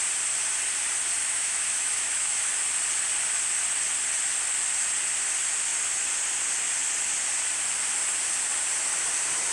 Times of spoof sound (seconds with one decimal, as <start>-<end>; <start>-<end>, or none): 1.2-2.5